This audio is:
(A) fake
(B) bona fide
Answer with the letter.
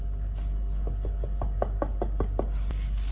B